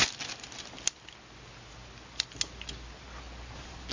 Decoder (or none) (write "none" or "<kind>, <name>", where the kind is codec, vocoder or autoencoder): none